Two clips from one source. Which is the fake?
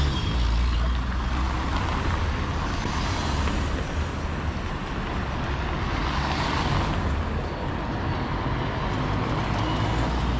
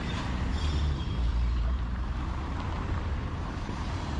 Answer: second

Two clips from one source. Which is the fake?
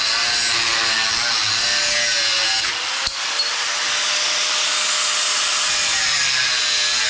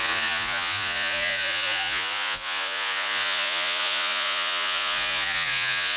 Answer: second